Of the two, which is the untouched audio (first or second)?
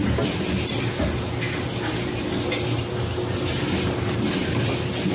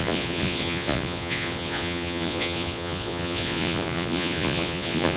first